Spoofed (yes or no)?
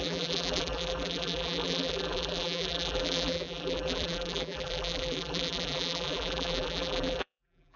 yes